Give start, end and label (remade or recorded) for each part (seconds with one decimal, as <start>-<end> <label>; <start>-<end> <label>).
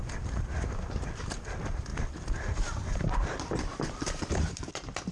0.0-1.9 recorded; 1.9-5.1 remade